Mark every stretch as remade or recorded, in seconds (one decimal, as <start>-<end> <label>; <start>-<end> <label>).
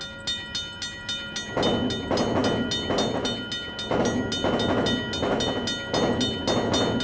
0.0-7.0 recorded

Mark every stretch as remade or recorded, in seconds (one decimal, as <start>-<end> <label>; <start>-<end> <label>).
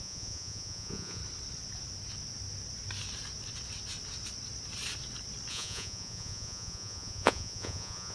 0.0-1.2 remade; 1.2-5.5 recorded; 5.5-8.1 remade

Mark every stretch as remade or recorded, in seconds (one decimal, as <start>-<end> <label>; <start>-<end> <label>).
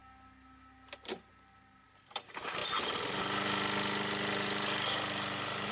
0.0-5.7 recorded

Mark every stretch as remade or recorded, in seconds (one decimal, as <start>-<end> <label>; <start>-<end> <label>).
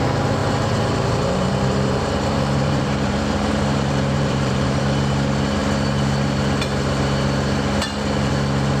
0.0-0.4 recorded; 0.4-4.8 remade; 4.8-8.8 recorded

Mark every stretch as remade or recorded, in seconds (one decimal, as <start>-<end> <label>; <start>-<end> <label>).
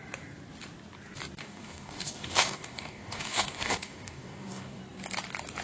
0.0-1.4 recorded; 1.4-4.8 remade; 4.8-5.6 recorded